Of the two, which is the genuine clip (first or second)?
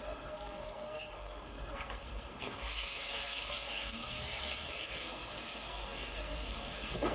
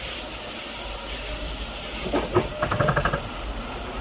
second